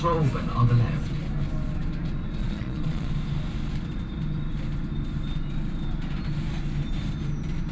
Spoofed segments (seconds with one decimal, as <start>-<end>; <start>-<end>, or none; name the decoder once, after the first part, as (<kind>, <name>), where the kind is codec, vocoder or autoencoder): 2.4-3.1 (vocoder, Vocos)